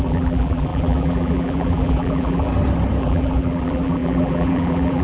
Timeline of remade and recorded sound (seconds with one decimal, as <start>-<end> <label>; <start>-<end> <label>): 0.0-2.5 remade; 2.5-3.0 recorded; 3.0-5.0 remade